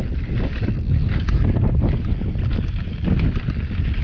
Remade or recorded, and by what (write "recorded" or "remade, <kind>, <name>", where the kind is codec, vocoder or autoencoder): recorded